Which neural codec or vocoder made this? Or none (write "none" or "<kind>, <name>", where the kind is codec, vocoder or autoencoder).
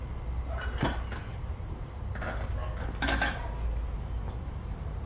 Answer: none